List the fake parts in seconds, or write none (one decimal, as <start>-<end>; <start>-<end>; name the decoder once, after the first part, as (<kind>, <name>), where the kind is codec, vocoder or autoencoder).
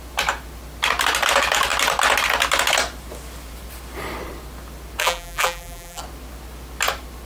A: 5.0-6.0 (vocoder, BigVGAN v2)